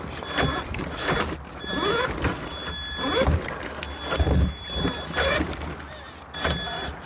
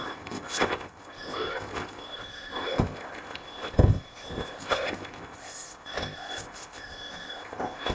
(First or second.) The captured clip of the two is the first